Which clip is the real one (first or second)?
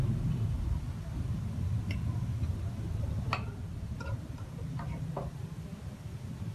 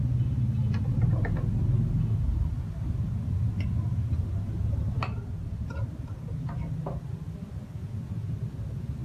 second